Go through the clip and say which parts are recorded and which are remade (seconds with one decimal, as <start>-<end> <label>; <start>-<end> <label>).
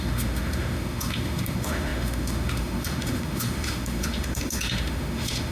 0.0-5.5 remade